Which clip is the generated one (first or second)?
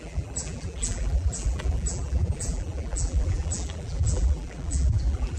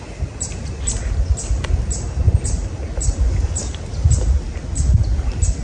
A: first